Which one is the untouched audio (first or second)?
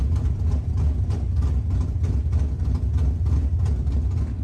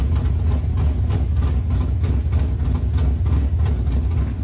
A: second